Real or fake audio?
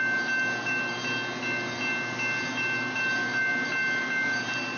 real